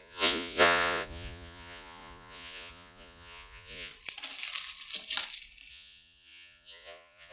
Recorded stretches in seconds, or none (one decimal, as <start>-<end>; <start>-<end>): 3.9-5.7